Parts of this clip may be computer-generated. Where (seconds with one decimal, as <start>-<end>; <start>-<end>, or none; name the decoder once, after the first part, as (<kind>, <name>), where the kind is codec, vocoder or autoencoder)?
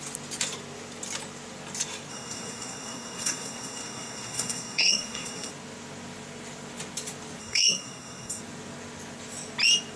2.1-5.5 (codec, SNAC); 7.4-8.4